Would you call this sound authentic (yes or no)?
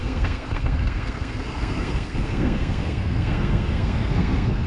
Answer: no